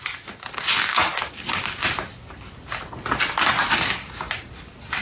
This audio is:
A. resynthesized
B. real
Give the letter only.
B